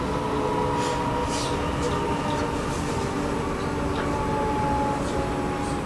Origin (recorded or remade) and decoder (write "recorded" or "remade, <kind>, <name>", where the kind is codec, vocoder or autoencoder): recorded